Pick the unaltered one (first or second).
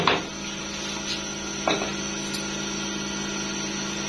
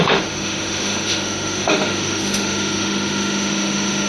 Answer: first